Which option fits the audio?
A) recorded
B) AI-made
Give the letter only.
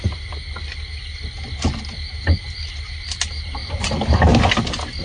A